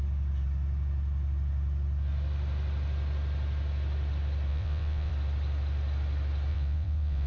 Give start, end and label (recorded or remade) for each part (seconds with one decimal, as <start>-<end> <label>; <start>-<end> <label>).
0.0-4.5 recorded; 4.5-5.1 remade; 5.1-6.5 recorded; 6.5-7.3 remade